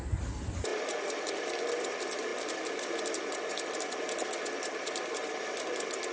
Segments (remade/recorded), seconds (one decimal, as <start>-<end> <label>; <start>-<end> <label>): 0.0-6.1 recorded